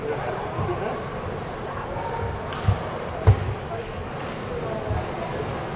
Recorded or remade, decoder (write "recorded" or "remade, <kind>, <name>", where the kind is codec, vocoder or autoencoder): recorded